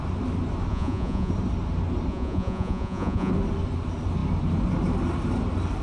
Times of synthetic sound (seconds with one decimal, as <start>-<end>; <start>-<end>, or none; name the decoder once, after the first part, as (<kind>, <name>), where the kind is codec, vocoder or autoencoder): 0.7-1.3 (vocoder, Vocos); 2.1-3.3